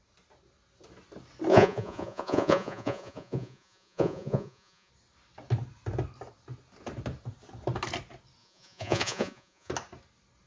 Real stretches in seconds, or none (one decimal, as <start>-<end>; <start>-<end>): 0.0-1.5; 4.9-8.4; 9.7-10.5